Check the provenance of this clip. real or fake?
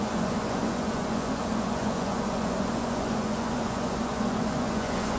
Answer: fake